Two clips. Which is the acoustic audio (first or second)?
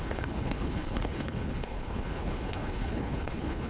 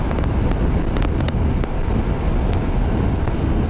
second